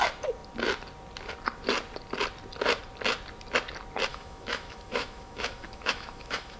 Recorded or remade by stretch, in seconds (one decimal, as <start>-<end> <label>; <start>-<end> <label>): 0.0-4.1 recorded; 4.1-6.6 remade